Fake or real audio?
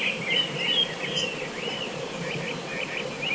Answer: real